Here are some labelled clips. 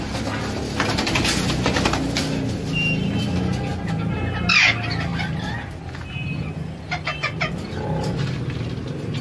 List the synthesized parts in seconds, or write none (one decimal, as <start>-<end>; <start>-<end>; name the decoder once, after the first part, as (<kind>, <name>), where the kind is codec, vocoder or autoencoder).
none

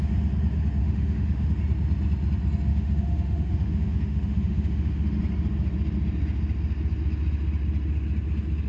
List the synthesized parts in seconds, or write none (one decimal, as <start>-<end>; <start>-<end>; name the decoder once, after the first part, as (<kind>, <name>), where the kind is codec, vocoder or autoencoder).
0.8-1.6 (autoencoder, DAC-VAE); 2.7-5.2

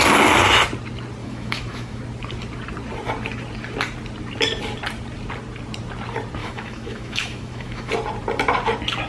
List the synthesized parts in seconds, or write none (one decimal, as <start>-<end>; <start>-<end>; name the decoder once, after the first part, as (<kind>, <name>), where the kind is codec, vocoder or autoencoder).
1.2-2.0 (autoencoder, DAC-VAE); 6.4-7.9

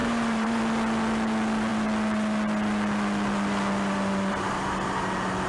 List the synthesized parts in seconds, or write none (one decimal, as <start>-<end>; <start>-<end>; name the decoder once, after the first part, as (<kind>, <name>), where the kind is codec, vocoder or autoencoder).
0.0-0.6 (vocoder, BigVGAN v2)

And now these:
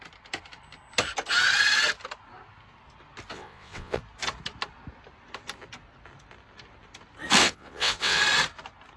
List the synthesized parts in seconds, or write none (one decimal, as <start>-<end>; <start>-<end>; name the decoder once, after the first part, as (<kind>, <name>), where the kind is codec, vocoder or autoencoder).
3.3-4.0 (vocoder, WaveNeXt); 7.4-8.2

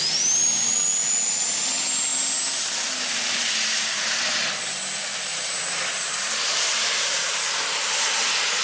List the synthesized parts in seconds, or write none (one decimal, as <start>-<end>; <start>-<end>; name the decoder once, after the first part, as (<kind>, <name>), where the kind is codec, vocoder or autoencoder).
5.3-8.0 (vocoder, BigVGAN v2)

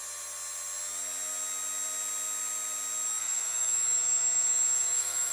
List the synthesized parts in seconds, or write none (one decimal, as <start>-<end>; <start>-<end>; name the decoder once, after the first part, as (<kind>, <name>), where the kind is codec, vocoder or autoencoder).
3.2-5.3 (autoencoder, DAC-VAE)

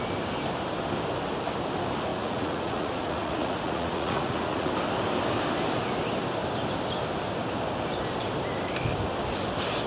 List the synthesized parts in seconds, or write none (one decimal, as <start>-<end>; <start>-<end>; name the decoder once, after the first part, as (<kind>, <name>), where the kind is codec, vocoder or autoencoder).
2.1-4.7 (vocoder, Vocos)